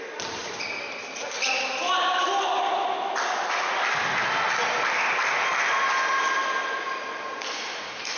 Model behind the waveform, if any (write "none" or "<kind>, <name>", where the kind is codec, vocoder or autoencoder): none